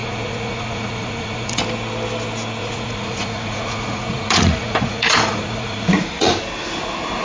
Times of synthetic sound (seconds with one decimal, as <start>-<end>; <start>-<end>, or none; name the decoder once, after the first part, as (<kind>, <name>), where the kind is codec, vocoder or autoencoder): 0.0-1.6 (vocoder, Vocos); 2.6-6.3